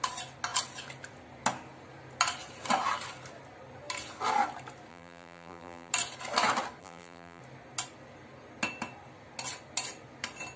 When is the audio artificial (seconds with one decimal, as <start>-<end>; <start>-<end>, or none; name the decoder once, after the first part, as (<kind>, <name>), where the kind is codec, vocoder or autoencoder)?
4.9-5.9 (vocoder, BigVGAN v2); 6.8-7.4